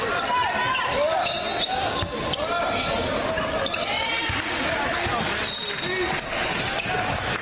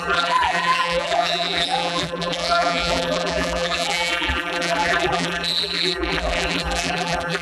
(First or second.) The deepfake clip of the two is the second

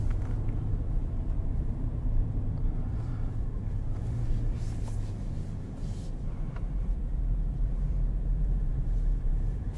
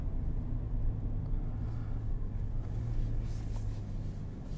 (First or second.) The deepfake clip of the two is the first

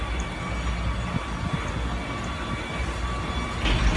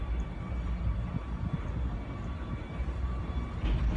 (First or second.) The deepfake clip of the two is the second